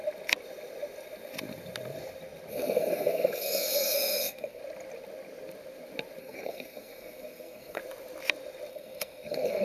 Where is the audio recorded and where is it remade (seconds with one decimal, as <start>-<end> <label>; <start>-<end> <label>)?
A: 0.0-2.5 recorded; 2.5-4.6 remade; 4.6-6.2 recorded; 6.2-7.8 remade; 7.8-8.7 recorded; 8.7-9.6 remade